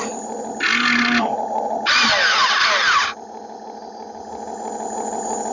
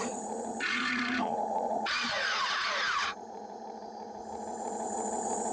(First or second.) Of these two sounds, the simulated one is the second